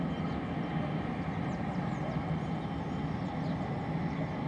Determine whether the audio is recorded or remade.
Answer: recorded